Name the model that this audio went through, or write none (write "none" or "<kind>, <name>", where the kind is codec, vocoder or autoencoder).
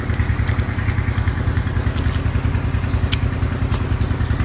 none